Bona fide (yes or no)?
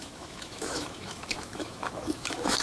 no